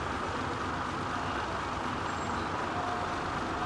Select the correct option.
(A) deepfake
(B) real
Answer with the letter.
B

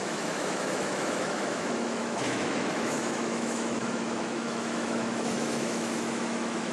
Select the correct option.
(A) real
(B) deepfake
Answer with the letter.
B